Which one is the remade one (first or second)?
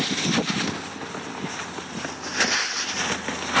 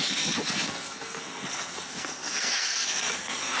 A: second